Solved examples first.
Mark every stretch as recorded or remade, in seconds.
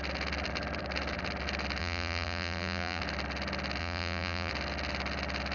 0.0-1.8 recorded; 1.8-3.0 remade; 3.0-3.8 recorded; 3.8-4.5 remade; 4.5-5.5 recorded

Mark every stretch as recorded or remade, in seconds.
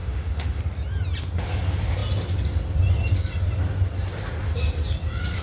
0.0-0.6 remade; 0.6-5.4 recorded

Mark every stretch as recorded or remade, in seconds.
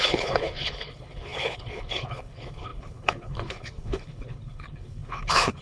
0.0-5.6 remade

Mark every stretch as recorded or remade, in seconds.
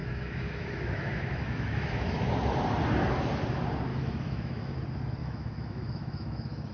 0.0-2.3 remade; 2.3-3.9 recorded; 3.9-4.7 remade; 4.7-5.2 recorded; 5.2-6.7 remade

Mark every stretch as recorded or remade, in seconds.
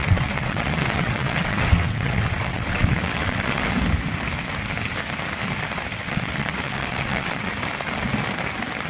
0.0-3.6 remade; 3.6-5.9 recorded; 5.9-7.5 remade; 7.5-8.9 recorded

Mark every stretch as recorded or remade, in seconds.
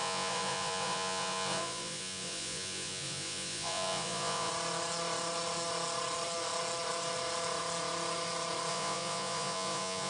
0.0-4.5 remade; 4.5-8.7 recorded; 8.7-10.1 remade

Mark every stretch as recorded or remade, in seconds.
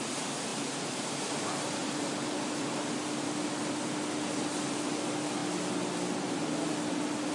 0.0-7.3 recorded